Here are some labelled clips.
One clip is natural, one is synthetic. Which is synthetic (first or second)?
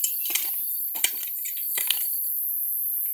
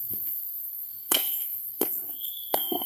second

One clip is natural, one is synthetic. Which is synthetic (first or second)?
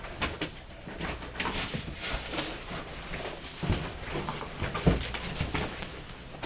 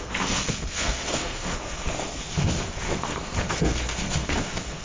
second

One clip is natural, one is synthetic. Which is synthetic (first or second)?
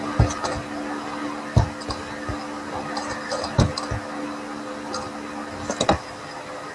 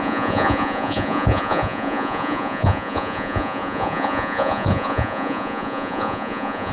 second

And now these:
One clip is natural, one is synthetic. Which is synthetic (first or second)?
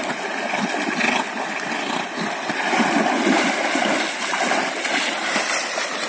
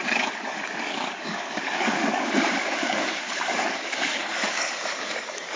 second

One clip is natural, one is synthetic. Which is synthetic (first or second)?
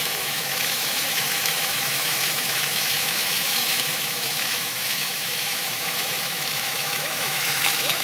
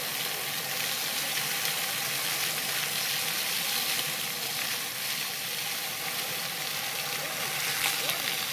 first